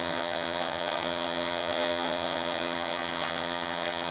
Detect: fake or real fake